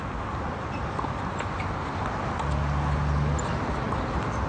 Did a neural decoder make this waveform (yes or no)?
no